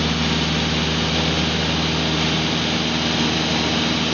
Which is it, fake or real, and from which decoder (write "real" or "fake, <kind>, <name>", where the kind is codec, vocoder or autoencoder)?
real